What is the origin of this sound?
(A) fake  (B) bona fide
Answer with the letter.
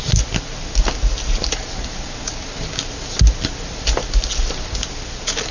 B